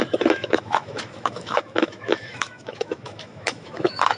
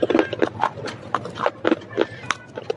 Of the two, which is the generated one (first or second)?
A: first